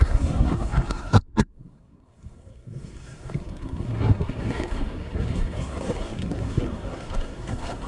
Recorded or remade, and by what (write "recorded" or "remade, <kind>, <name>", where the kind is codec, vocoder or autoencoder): remade, codec, SNAC